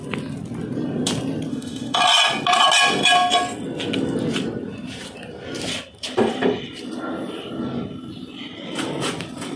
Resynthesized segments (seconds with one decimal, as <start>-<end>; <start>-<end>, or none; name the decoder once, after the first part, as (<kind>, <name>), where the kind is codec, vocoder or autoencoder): 1.5-2.0 (autoencoder, DAC-VAE)